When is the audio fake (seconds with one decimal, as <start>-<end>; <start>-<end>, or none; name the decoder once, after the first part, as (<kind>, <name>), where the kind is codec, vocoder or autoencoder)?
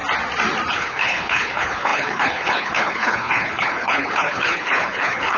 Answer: 0.7-5.4 (codec, HILCodec)